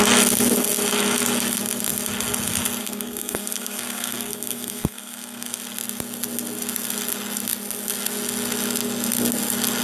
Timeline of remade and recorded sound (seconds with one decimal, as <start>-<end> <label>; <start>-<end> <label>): 0.0-2.8 recorded; 2.8-5.6 remade; 5.6-9.8 recorded